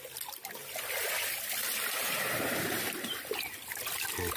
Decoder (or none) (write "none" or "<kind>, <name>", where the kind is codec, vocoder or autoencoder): none